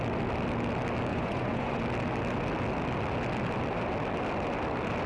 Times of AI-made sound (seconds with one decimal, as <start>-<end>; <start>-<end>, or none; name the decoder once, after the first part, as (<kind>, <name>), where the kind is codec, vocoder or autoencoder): 1.1-1.8 (vocoder, Vocos)